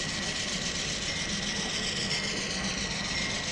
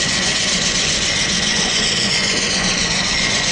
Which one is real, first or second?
first